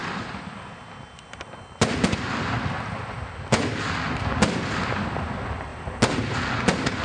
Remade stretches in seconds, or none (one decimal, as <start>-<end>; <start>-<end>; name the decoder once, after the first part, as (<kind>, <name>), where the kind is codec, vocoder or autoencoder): none